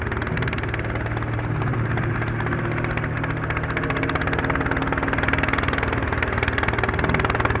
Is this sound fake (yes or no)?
no